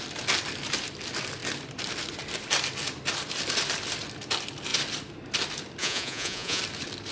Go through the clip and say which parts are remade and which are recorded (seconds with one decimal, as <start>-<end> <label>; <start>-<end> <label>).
0.0-5.8 recorded; 5.8-6.6 remade; 6.6-7.1 recorded